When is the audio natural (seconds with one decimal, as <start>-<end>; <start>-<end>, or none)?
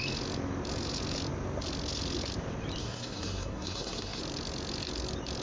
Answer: 0.0-2.8; 4.2-5.4